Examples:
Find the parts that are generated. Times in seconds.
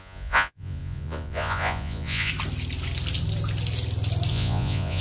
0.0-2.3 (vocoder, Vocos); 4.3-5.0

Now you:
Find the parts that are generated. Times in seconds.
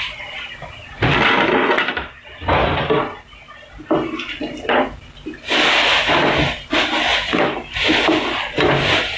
none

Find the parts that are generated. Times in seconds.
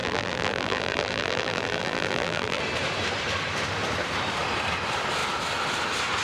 0.0-2.6 (vocoder, BigVGAN v2)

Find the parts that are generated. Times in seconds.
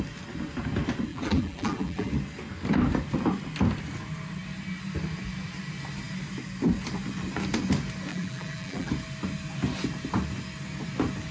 1.1-2.1 (vocoder, BigVGAN v2); 8.1-8.9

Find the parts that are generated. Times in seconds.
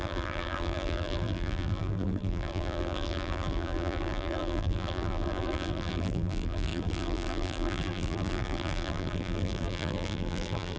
0.0-10.8 (vocoder, BigVGAN v2)